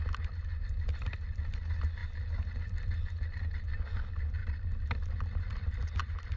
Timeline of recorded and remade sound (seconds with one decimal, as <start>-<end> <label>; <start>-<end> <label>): 0.0-4.4 recorded; 4.4-5.2 remade; 5.2-6.4 recorded